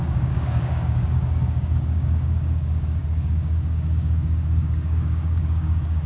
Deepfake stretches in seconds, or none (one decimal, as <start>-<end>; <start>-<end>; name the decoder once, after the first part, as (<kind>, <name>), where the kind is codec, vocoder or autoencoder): 0.0-6.1 (codec, DAC)